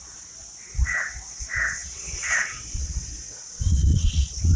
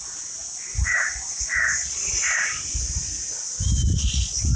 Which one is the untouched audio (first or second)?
second